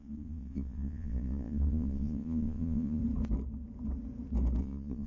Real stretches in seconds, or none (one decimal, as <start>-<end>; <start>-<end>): 3.0-4.6